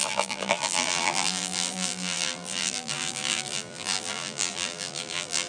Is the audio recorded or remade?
remade